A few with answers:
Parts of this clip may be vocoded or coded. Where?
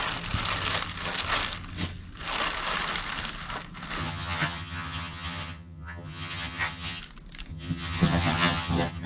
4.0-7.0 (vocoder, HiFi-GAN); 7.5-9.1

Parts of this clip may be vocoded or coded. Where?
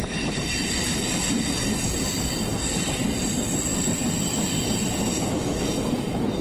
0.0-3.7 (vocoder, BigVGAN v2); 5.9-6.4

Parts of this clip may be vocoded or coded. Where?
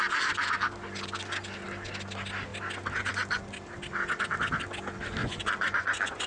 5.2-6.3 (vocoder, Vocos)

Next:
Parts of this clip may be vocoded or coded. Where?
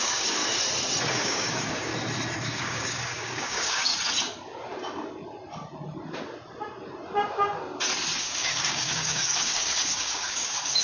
0.0-0.4 (codec, DAC); 1.1-1.9; 2.4-3.9; 8.2-10.8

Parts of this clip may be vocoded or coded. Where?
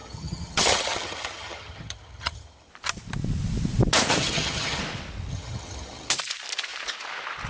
0.0-2.7 (vocoder, HiFi-GAN); 4.2-4.8; 5.3-6.1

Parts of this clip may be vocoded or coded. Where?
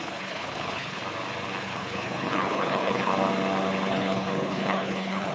0.0-1.0 (codec, HILCodec); 1.6-3.1; 3.9-5.3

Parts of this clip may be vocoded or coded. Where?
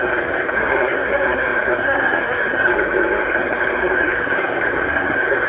0.0-5.5 (codec, SNAC)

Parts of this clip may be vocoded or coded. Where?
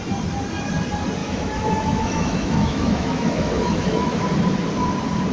1.2-4.2 (autoencoder, DAC-VAE)